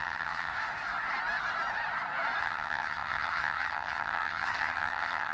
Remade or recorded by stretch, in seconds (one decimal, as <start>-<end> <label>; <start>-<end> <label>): 0.0-0.5 remade; 0.5-2.4 recorded; 2.4-5.3 remade